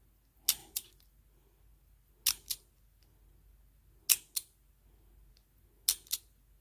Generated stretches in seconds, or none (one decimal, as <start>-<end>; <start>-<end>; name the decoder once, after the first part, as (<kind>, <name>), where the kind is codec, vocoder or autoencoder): 0.6-1.2 (vocoder, BigVGAN v2)